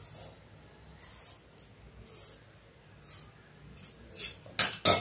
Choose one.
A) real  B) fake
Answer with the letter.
A